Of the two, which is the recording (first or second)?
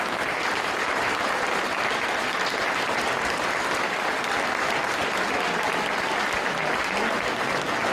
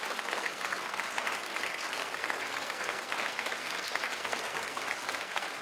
first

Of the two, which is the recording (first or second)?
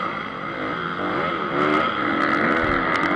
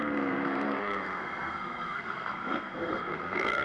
first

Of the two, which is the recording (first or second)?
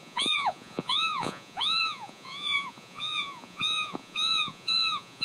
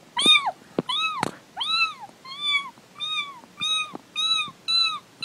second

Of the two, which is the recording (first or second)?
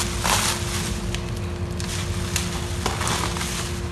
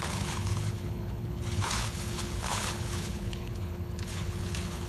first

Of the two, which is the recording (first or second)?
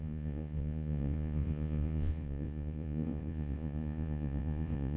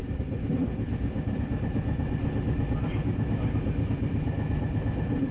second